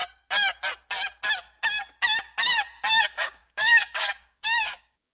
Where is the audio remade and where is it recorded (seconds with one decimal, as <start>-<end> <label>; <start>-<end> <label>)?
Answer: 0.0-3.0 recorded; 3.0-5.1 remade